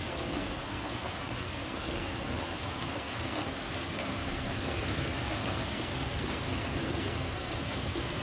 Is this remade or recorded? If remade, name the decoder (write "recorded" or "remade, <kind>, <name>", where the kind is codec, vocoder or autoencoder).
remade, codec, SNAC